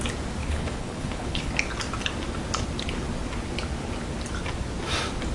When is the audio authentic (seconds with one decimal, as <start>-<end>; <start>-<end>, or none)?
0.0-0.4; 1.5-5.3